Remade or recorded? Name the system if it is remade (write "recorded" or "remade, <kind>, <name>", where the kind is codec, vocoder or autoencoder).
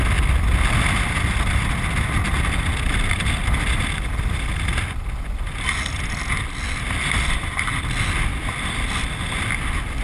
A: recorded